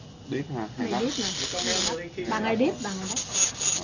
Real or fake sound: real